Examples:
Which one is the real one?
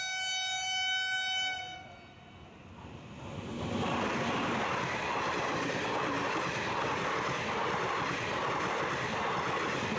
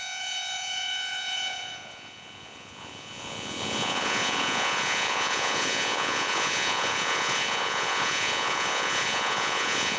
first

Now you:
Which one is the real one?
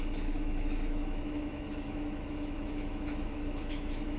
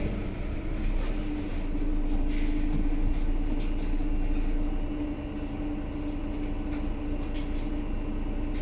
second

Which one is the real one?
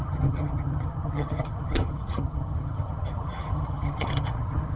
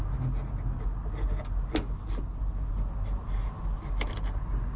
second